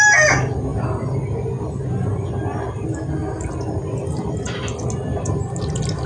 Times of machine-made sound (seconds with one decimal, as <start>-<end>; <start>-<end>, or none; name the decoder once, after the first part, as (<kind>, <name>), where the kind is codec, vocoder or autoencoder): none